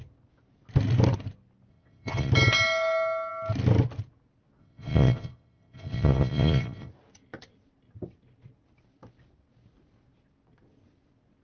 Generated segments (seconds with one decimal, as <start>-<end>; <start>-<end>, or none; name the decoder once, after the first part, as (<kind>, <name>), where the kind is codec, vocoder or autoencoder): 1.7-2.3 (vocoder, Vocos); 4.6-6.9